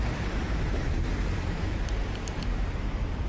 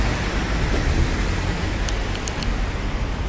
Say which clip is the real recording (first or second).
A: second